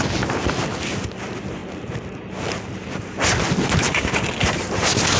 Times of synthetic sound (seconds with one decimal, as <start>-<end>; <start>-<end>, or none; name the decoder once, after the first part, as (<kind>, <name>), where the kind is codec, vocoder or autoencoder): none